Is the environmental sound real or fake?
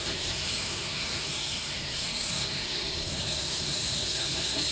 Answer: fake